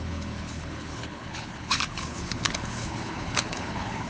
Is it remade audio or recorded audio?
remade